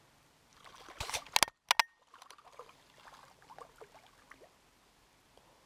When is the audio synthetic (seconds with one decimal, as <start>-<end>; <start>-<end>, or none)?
none